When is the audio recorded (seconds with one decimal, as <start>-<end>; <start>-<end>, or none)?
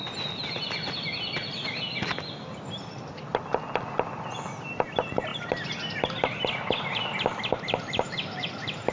0.0-8.9